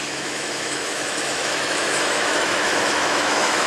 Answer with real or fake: fake